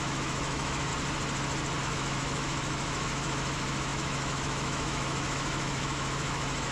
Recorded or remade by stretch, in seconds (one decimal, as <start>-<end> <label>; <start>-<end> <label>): 0.0-0.9 remade; 0.9-1.8 recorded; 1.8-6.7 remade